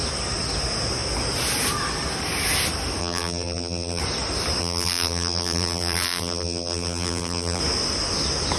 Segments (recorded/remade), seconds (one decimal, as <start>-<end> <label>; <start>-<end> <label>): 0.0-3.0 recorded; 3.0-4.0 remade; 4.0-4.6 recorded; 4.6-7.6 remade; 7.6-8.6 recorded